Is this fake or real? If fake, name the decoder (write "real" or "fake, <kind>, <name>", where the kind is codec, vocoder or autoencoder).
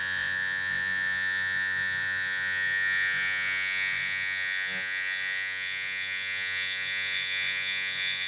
fake, vocoder, Vocos